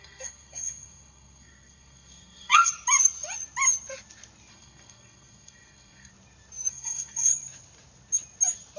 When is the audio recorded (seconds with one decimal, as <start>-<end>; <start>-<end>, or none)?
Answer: 2.7-4.5; 6.1-6.7; 7.3-8.8